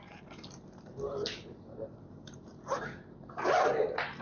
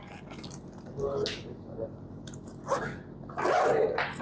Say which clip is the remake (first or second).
first